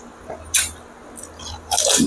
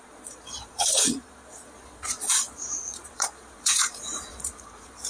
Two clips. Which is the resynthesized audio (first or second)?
second